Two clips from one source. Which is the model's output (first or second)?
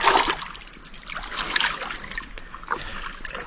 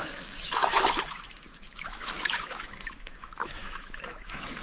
second